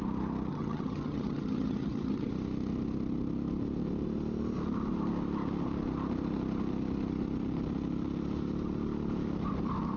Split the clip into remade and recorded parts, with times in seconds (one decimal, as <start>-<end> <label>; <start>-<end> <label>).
0.0-0.5 recorded; 0.5-2.3 remade; 2.3-10.0 recorded